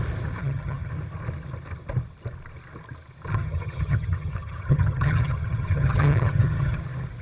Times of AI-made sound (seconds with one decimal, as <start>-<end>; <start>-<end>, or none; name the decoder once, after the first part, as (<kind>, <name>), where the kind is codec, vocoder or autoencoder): 0.4-0.9 (vocoder, HiFi-GAN); 3.3-6.8